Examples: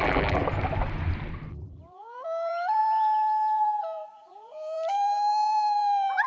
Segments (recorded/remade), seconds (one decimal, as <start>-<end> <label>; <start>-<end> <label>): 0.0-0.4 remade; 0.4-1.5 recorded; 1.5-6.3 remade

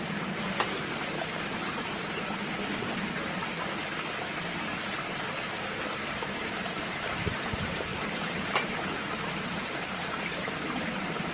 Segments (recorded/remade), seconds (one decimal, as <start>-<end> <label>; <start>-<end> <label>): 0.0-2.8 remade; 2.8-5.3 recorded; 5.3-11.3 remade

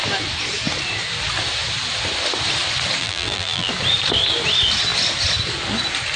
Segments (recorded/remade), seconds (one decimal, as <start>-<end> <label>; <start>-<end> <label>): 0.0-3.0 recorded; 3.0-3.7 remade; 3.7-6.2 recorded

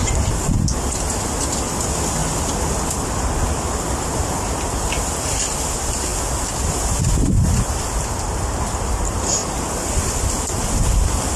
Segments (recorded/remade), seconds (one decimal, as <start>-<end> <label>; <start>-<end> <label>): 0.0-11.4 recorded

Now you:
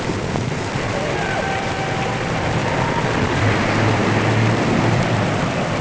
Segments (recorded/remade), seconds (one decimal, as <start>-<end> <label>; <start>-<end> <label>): 0.0-2.6 remade; 2.6-3.1 recorded; 3.1-4.0 remade; 4.0-4.8 recorded; 4.8-5.8 remade

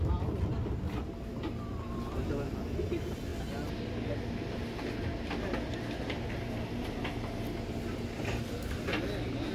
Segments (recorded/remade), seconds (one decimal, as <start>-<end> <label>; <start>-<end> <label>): 0.0-9.5 recorded

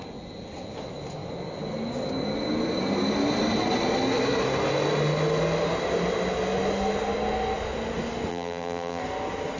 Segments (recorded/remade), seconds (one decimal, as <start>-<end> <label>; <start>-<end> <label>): 0.0-8.3 recorded; 8.3-9.0 remade; 9.0-9.6 recorded